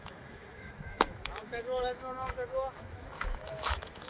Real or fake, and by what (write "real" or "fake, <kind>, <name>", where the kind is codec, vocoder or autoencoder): fake, autoencoder, DAC-VAE